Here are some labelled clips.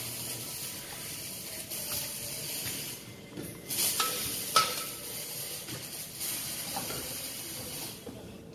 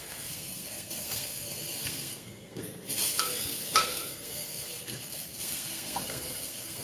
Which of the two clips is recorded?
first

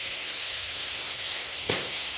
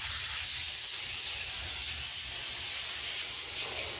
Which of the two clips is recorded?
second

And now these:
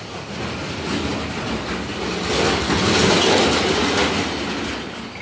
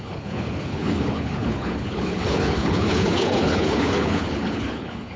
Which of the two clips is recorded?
first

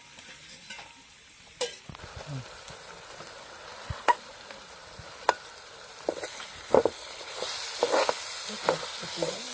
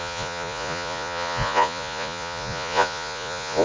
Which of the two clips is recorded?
first